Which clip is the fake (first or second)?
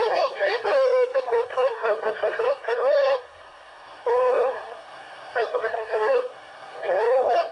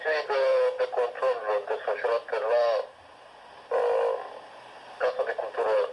first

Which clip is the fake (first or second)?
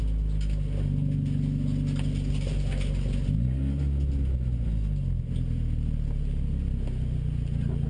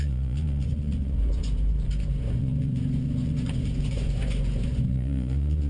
second